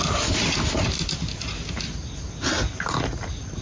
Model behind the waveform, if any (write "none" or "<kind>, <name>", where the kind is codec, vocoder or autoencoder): none